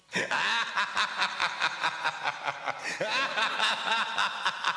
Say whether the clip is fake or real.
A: real